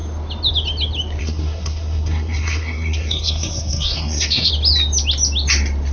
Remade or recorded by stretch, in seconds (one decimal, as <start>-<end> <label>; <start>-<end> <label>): 0.0-1.2 recorded; 1.2-4.5 remade; 4.5-5.9 recorded